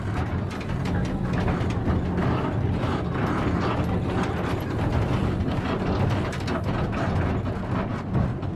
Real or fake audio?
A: real